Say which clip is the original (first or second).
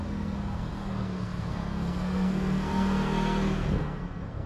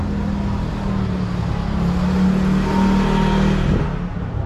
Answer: second